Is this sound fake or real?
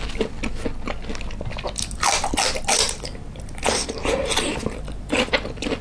real